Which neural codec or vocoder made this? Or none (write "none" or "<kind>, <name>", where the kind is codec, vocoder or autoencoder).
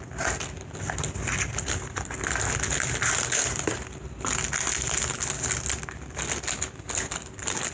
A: none